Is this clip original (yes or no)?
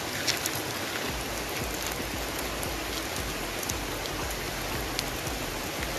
yes